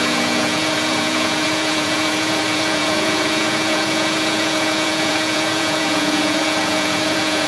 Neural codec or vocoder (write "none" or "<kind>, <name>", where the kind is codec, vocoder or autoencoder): vocoder, Vocos